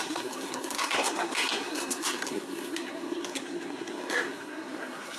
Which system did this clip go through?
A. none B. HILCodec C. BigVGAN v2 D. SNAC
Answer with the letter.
D